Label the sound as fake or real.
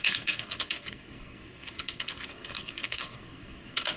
fake